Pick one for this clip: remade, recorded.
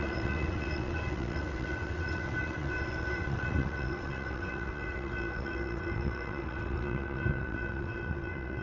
remade